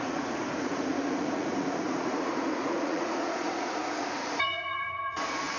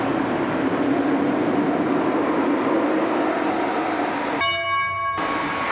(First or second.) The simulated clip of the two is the first